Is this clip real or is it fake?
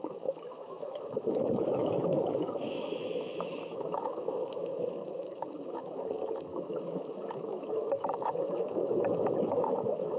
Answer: fake